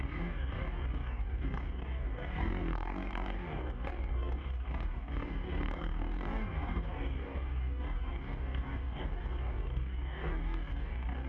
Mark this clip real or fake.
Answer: fake